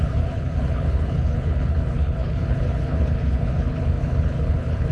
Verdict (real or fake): fake